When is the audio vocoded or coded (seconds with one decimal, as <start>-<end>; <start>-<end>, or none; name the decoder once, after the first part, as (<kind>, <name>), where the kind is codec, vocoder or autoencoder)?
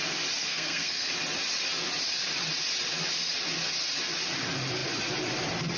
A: 0.4-1.1 (codec, SNAC)